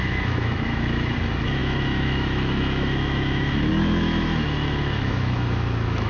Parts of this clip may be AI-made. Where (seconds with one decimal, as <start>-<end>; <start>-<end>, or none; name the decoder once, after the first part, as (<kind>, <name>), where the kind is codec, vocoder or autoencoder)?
0.0-6.1 (autoencoder, DAC-VAE)